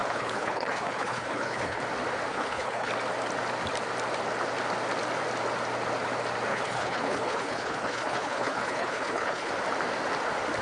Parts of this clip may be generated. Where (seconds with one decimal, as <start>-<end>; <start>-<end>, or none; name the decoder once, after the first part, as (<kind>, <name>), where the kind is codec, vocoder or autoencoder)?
0.0-1.8 (codec, HILCodec); 2.3-2.9; 6.5-9.5